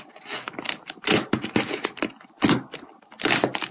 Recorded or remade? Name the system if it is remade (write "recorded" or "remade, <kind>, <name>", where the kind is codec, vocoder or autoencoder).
recorded